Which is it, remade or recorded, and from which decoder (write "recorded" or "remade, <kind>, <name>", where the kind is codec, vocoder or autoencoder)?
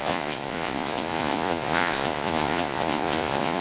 remade, vocoder, Vocos